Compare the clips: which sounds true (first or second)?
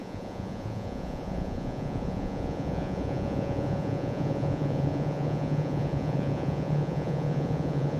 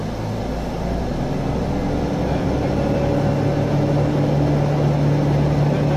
second